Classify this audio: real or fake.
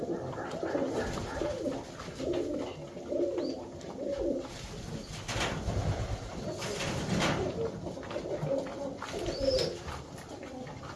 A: real